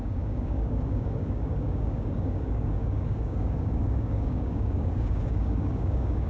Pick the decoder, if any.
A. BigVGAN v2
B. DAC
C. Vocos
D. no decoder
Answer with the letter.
B